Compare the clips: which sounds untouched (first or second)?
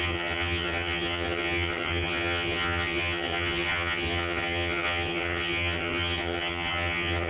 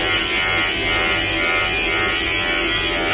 second